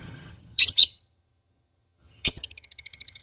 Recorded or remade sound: remade